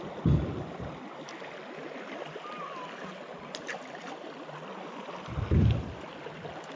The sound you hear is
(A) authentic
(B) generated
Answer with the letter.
A